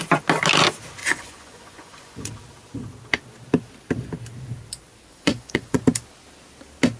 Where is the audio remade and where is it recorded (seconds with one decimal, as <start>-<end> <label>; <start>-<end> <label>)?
0.0-1.0 recorded; 1.0-2.3 remade; 2.3-5.1 recorded; 5.1-5.8 remade; 5.8-7.0 recorded